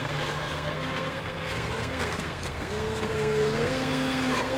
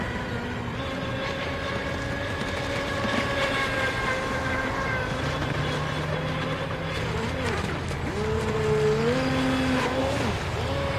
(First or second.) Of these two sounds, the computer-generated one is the first